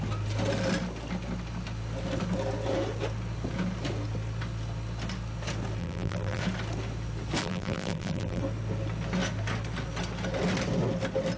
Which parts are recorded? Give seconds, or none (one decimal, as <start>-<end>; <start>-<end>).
0.0-5.8; 6.4-7.4; 8.4-11.4